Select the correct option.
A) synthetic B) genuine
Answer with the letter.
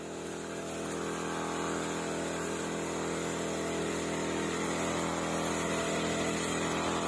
B